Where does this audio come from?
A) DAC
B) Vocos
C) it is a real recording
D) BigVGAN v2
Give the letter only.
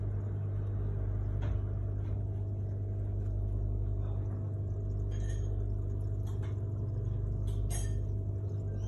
C